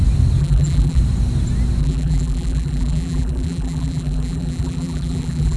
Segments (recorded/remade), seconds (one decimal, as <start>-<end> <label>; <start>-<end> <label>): 0.0-0.4 recorded; 0.4-1.0 remade; 1.0-1.8 recorded; 1.8-5.6 remade